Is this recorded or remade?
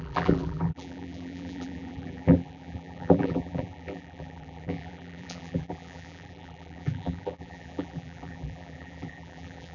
remade